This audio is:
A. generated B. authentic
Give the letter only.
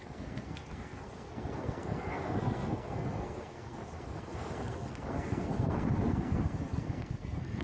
A